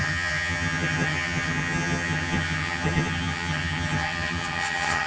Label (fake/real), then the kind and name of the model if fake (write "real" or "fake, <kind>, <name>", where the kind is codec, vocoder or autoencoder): fake, vocoder, HiFi-GAN